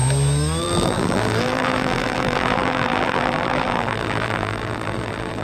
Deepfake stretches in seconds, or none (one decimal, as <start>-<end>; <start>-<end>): 0.6-5.4